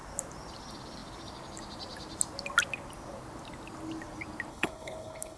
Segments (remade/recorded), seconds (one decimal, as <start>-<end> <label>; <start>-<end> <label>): 0.0-4.5 recorded; 4.5-5.4 remade